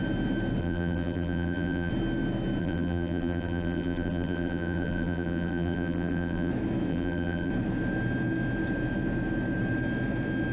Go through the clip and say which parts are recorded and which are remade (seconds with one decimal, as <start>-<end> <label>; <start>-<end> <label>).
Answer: 0.0-0.6 recorded; 0.6-1.9 remade; 1.9-2.6 recorded; 2.6-6.5 remade; 6.5-6.9 recorded; 6.9-7.5 remade; 7.5-10.5 recorded